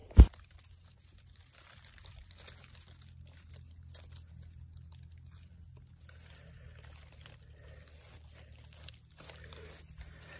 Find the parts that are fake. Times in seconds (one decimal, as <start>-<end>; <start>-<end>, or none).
none